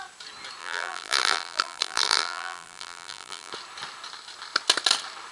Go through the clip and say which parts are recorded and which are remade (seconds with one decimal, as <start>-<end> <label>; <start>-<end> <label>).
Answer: 0.0-0.6 recorded; 0.6-3.5 remade; 3.5-5.3 recorded